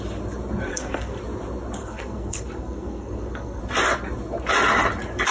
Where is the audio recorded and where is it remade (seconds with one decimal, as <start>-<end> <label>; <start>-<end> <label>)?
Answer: 0.0-0.7 recorded; 0.7-1.2 remade; 1.2-1.8 recorded; 1.8-3.6 remade; 3.6-5.3 recorded